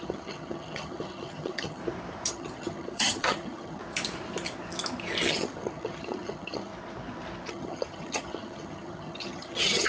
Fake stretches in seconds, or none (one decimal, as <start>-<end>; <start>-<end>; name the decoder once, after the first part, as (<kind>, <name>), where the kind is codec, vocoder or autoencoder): 0.0-1.8 (vocoder, HiFi-GAN); 2.3-3.8; 5.3-6.7; 7.5-9.9